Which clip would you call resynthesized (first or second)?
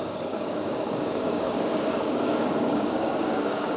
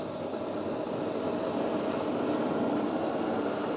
first